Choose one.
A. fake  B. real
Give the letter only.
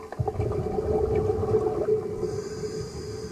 B